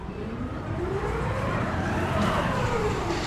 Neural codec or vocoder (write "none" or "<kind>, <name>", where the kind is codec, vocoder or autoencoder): vocoder, BigVGAN v2